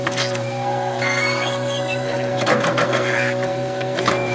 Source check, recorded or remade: remade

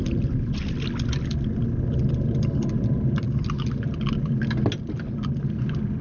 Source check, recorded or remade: recorded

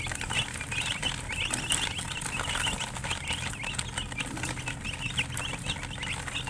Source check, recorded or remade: recorded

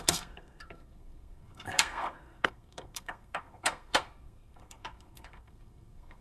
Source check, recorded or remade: remade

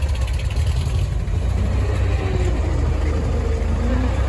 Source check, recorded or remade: recorded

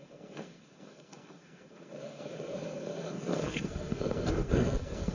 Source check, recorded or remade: remade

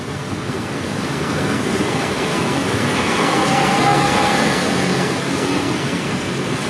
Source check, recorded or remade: remade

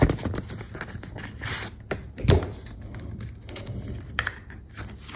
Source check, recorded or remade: recorded